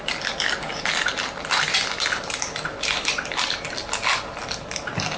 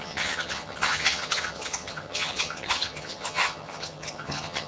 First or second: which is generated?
second